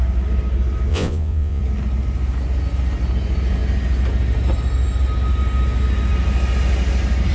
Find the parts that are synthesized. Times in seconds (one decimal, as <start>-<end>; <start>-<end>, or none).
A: 0.9-1.6